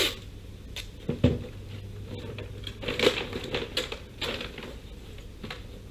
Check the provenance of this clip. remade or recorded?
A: recorded